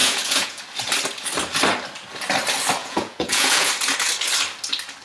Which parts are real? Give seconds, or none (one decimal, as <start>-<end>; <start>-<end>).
0.6-2.8; 3.7-5.0